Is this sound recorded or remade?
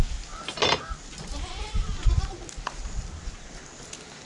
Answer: recorded